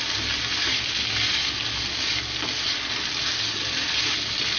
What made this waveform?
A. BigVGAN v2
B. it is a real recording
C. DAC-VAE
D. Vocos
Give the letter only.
B